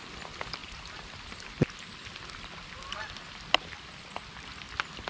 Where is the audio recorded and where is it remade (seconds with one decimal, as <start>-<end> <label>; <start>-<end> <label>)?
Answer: 0.0-5.1 recorded